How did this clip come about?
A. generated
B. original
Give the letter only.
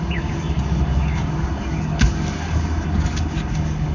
A